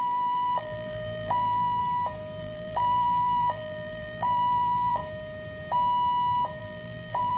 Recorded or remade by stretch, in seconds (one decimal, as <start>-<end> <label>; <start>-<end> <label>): 0.0-1.8 remade; 1.8-2.4 recorded; 2.4-5.0 remade; 5.0-6.6 recorded; 6.6-7.4 remade